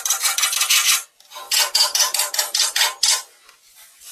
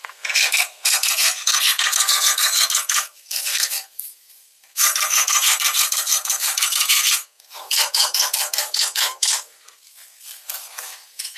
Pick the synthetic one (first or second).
second